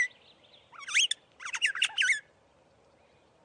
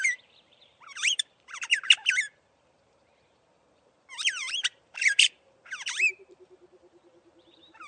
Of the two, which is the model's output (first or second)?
second